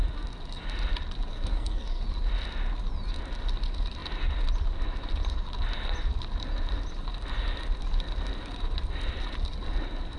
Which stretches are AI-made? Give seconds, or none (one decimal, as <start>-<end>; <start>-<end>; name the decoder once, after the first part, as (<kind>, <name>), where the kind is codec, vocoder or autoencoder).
1.3-2.0 (codec, SNAC)